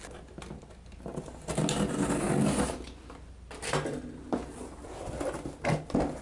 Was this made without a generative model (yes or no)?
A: yes